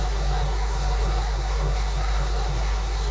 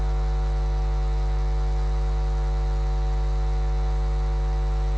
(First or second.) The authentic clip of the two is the second